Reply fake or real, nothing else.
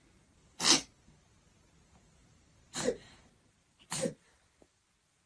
real